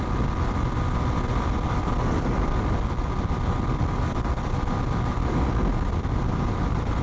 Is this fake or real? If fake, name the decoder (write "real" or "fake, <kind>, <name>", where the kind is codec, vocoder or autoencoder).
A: real